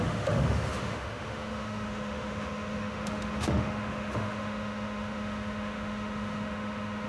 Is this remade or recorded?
remade